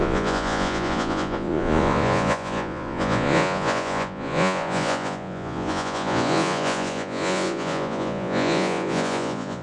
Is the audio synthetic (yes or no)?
yes